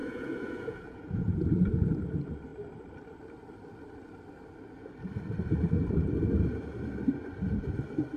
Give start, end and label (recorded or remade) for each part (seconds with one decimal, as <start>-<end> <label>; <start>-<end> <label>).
0.0-1.3 remade; 1.3-8.2 recorded